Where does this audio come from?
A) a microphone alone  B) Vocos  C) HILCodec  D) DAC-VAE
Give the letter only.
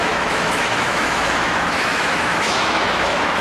D